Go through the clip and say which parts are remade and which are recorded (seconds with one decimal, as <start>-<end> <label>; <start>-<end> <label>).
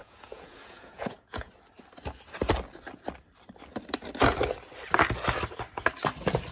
0.0-1.5 remade; 1.5-6.5 recorded